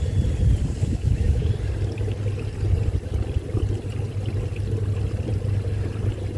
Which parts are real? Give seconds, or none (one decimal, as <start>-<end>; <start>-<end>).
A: 0.0-0.8; 1.5-6.4